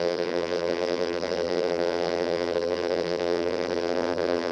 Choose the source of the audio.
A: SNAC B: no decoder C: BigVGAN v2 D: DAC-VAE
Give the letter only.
C